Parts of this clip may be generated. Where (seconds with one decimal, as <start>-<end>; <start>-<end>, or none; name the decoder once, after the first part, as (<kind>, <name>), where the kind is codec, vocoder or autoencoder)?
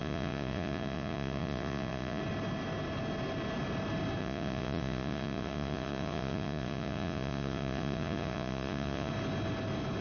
0.0-2.2 (vocoder, Vocos); 4.2-9.1